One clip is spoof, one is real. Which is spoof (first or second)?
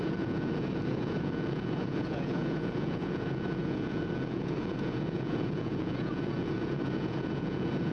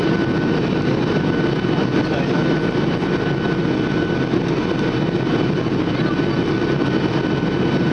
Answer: first